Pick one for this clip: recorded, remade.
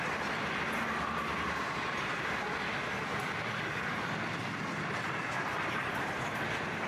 recorded